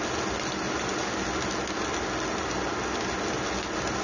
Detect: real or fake real